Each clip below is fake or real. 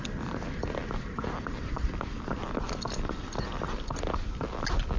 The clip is fake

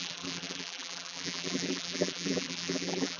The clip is fake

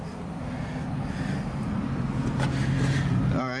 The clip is real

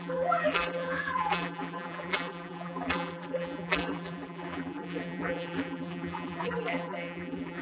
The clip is fake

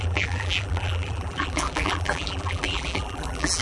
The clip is fake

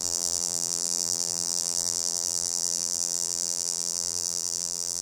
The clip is fake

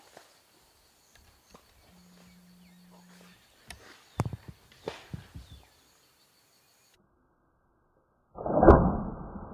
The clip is real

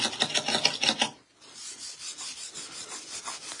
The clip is real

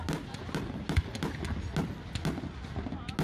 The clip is real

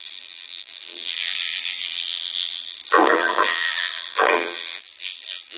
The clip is fake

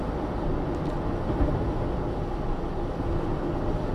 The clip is real